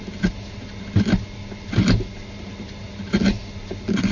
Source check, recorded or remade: recorded